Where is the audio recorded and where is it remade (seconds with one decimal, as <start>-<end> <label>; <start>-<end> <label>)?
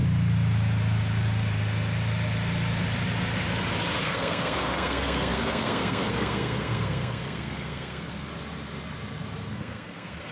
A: 0.0-4.0 recorded; 4.0-8.3 remade; 8.3-9.5 recorded; 9.5-10.3 remade